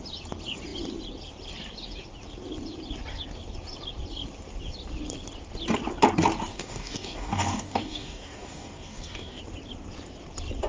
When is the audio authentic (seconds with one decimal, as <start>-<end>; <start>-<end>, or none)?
0.0-6.5; 9.4-10.7